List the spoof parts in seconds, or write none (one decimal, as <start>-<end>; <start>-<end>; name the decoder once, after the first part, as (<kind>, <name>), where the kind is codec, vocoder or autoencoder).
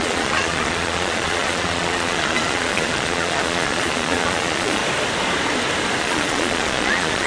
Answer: 0.0-4.8 (vocoder, Vocos); 6.0-7.3